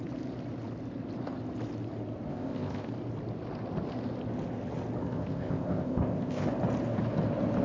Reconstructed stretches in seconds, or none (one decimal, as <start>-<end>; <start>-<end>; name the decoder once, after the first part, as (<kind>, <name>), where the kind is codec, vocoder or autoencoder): 2.3-2.9 (codec, ZipCodec); 5.0-6.5